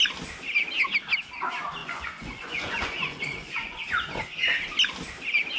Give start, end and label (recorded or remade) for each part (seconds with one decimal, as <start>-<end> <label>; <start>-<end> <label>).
0.0-1.8 recorded; 1.8-4.6 remade; 4.6-5.6 recorded